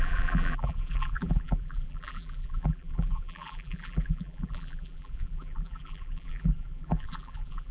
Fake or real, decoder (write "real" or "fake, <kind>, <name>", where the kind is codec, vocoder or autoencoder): fake, vocoder, BigVGAN v2